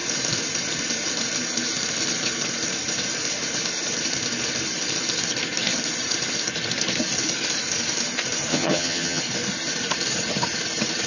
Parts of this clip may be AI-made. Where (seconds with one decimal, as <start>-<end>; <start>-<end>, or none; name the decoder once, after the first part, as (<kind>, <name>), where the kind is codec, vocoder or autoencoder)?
8.5-9.2 (vocoder, HiFi-GAN)

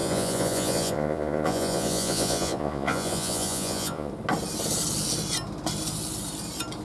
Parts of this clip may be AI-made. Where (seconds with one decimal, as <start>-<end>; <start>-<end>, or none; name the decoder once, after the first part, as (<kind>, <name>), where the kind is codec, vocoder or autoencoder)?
0.0-4.1 (vocoder, Vocos)